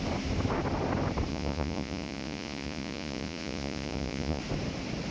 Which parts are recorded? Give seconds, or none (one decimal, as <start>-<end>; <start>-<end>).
0.0-1.3; 4.4-5.1